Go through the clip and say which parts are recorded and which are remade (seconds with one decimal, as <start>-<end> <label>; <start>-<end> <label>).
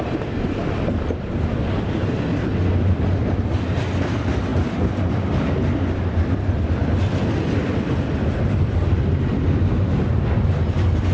0.0-11.1 recorded